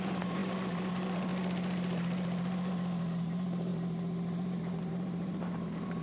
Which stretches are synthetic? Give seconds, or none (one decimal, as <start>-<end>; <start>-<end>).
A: 0.0-1.3; 3.2-6.0

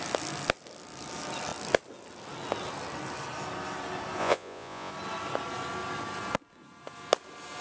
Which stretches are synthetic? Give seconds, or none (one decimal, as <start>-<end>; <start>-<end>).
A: 4.2-4.9

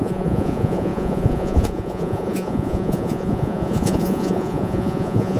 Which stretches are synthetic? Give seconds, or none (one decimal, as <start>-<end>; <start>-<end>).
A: 0.0-5.4

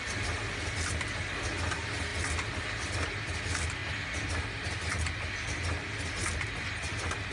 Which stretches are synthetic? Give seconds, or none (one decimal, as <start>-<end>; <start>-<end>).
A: none

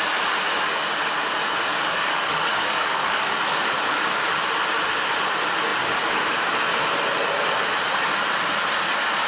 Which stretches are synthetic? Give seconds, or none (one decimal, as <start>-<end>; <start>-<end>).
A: 1.7-4.3

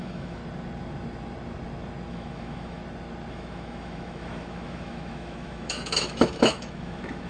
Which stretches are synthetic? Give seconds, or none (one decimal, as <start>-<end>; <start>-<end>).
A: 0.0-0.4; 2.1-2.8; 3.3-7.3